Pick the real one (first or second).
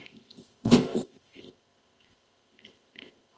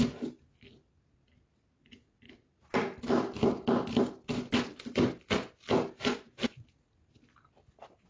second